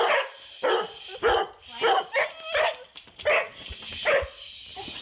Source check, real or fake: real